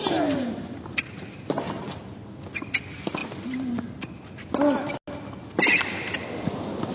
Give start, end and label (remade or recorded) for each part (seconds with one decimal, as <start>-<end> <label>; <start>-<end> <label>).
0.0-6.9 recorded

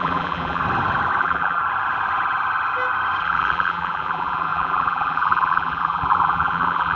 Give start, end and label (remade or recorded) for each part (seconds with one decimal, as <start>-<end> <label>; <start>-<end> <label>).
0.0-0.6 remade; 0.6-1.2 recorded; 1.2-1.6 remade; 1.6-3.2 recorded; 3.2-7.0 remade

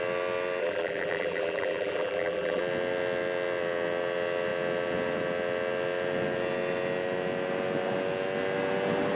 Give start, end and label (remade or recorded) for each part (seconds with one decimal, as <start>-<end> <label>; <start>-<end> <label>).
0.0-0.6 recorded; 0.6-2.6 remade; 2.6-9.2 recorded

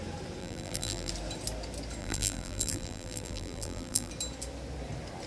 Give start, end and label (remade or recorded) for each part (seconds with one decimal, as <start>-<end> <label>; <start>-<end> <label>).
0.0-0.4 recorded; 0.4-1.1 remade; 1.1-2.0 recorded; 2.0-4.1 remade; 4.1-5.3 recorded

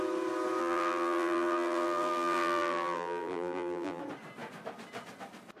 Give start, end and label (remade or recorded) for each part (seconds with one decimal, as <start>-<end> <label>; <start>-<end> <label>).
0.0-0.6 recorded; 0.6-4.0 remade; 4.0-5.6 recorded

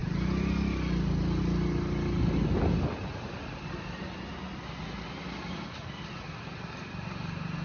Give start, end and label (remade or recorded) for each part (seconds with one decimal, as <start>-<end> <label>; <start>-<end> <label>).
0.0-7.6 recorded

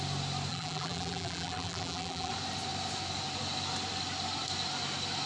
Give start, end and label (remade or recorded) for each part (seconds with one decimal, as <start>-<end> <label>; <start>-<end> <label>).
0.0-0.5 recorded; 0.5-2.3 remade; 2.3-5.3 recorded

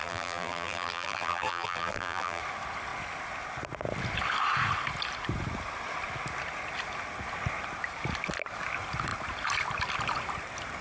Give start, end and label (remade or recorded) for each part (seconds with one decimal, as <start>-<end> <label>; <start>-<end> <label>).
0.0-2.4 remade; 2.4-10.8 recorded